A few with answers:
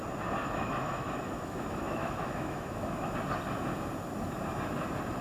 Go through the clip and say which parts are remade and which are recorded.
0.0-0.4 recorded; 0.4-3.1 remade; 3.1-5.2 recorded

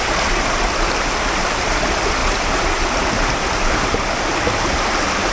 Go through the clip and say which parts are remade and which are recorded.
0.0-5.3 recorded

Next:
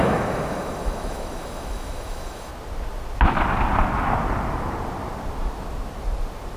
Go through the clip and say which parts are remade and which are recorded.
0.0-2.5 remade; 2.5-6.6 recorded

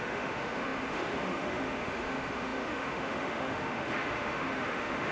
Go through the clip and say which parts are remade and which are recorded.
0.0-5.1 remade

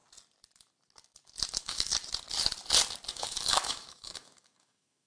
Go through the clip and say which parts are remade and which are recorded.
0.0-1.5 recorded; 1.5-1.9 remade; 1.9-3.1 recorded; 3.1-5.1 remade

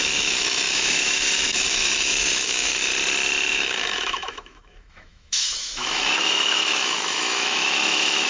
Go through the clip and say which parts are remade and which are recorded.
0.0-2.9 remade; 2.9-3.5 recorded; 3.5-8.3 remade

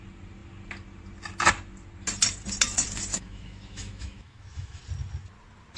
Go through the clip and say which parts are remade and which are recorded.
0.0-3.1 recorded; 3.1-4.8 remade; 4.8-5.8 recorded

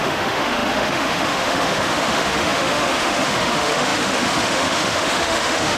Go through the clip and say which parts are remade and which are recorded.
0.0-5.8 remade